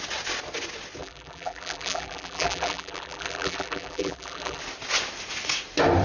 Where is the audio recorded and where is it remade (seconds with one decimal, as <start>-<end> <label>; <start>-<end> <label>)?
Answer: 0.0-1.0 recorded; 1.0-4.6 remade; 4.6-6.0 recorded